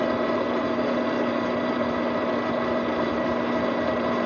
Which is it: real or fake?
real